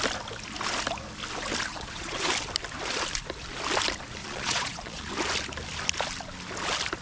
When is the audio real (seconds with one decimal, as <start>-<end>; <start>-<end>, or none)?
0.0-1.7; 2.3-4.2; 5.1-7.0